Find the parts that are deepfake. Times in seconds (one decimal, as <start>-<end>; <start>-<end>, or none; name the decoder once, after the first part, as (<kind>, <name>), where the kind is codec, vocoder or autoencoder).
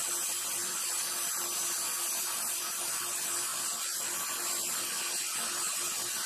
none